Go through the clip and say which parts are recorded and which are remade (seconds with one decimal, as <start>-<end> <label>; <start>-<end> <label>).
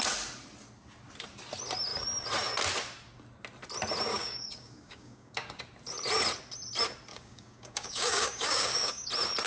0.0-4.1 recorded; 4.1-5.6 remade; 5.6-7.1 recorded; 7.1-9.1 remade; 9.1-9.5 recorded